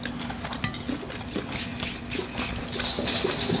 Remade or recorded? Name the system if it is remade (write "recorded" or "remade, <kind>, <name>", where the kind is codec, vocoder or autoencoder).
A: recorded